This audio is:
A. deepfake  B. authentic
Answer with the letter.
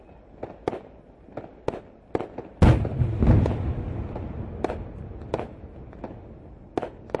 B